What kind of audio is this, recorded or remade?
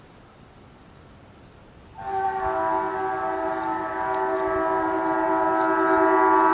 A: recorded